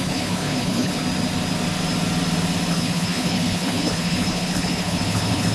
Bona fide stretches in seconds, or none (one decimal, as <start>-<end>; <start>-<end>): 1.0-2.7